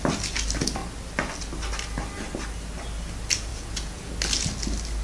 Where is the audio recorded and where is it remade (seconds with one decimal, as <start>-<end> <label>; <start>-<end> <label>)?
0.0-3.5 recorded; 3.5-4.1 remade; 4.1-5.0 recorded